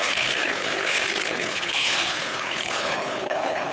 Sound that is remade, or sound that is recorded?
remade